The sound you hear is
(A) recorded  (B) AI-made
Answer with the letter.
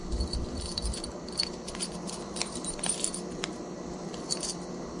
B